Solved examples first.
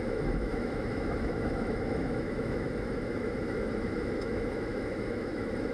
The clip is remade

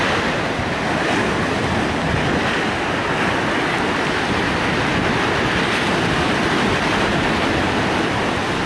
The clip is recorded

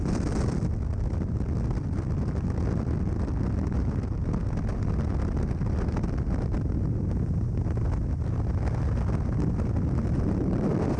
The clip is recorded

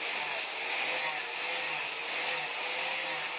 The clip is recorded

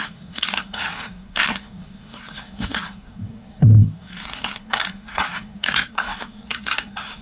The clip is remade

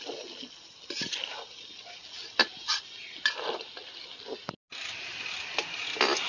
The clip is recorded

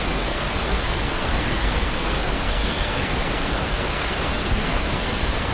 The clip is remade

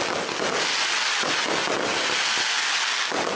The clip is recorded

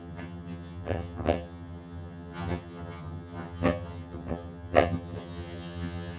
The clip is remade